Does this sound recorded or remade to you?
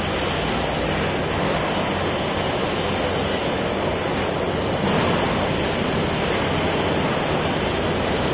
recorded